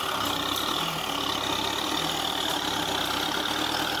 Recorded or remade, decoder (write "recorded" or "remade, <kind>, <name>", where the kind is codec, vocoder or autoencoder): recorded